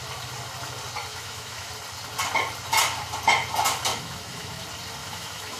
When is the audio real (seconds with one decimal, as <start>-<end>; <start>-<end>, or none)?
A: 0.0-1.1; 1.7-3.9; 4.6-5.0

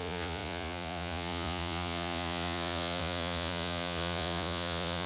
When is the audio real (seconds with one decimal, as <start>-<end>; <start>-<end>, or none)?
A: none